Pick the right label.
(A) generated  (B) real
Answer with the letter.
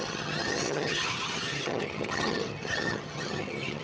A